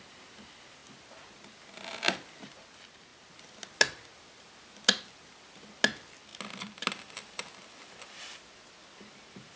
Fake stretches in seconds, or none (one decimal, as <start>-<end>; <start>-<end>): none